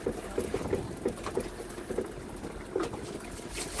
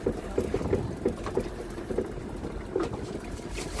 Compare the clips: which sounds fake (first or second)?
second